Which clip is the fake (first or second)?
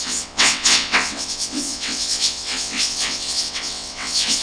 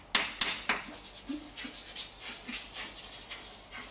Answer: first